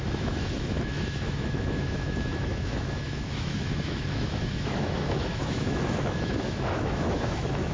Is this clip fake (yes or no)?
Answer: yes